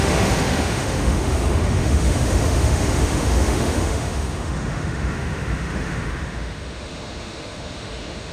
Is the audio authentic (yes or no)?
no